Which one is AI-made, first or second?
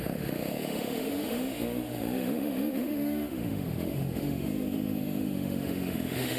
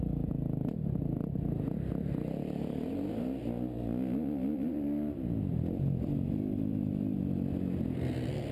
first